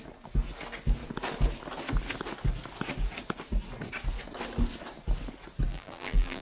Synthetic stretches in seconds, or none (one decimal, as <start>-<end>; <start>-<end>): 5.7-6.4